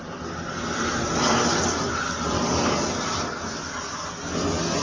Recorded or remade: recorded